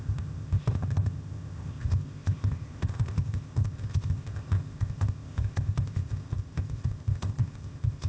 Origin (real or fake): fake